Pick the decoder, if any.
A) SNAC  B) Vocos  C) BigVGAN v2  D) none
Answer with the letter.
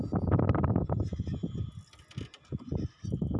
D